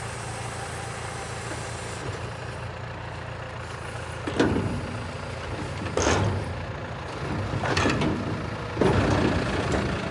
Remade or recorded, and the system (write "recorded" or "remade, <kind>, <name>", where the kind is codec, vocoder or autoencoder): recorded